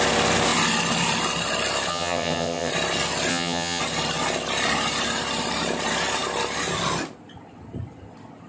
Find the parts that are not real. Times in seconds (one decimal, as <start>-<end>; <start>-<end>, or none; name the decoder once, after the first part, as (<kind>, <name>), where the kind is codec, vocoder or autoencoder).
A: 1.9-2.7 (vocoder, HiFi-GAN); 3.3-3.8